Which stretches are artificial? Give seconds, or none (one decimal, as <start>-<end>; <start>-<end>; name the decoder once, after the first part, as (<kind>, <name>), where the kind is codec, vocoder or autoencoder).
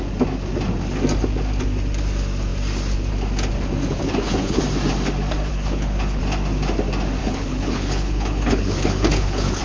4.0-4.6 (codec, HILCodec); 5.5-6.2; 7.2-9.6